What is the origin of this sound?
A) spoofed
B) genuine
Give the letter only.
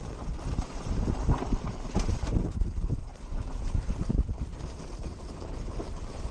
A